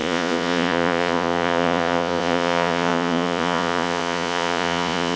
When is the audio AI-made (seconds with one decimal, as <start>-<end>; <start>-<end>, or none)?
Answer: 0.0-5.2